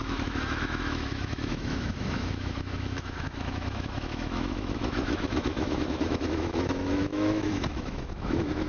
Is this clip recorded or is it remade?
remade